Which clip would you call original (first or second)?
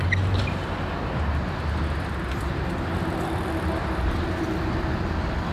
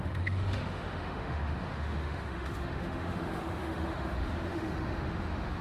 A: first